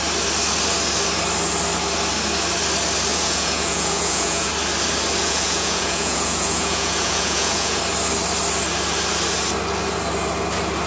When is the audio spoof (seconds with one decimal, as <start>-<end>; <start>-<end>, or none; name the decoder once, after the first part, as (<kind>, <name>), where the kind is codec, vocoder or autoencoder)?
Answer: 3.1-4.5 (vocoder, Vocos); 5.2-7.8